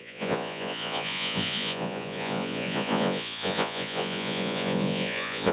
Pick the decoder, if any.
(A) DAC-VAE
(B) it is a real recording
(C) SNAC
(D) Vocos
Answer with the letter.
D